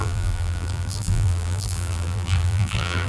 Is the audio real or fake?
fake